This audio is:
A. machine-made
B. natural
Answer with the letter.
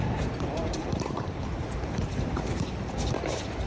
A